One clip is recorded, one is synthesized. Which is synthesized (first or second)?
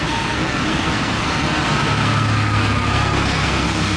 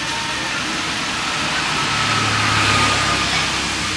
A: first